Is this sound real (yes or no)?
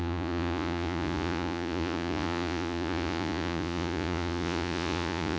no